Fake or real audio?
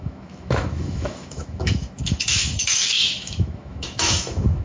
fake